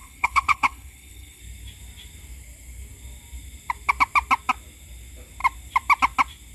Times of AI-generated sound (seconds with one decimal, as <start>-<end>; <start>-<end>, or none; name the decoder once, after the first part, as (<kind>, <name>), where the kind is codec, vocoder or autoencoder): 0.0-1.4 (codec, HILCodec)